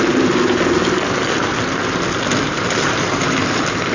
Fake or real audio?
real